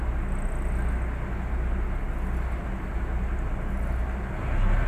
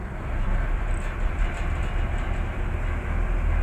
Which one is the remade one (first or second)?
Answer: second